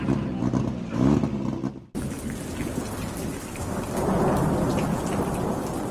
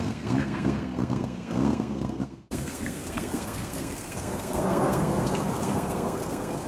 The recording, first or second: first